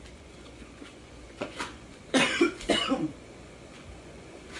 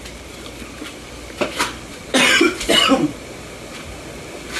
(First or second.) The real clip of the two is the second